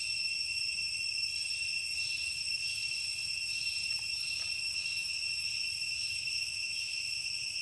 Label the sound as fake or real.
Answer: real